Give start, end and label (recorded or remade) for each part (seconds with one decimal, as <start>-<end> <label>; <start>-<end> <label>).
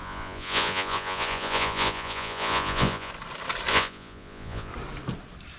0.0-3.1 remade; 3.1-3.7 recorded; 3.7-4.7 remade; 4.7-5.6 recorded